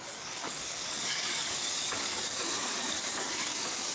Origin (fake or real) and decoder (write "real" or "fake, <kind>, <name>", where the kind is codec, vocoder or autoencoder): fake, codec, DAC